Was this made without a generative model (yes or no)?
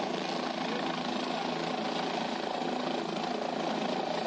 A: yes